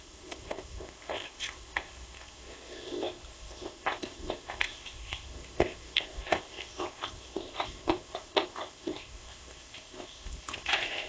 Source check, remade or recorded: remade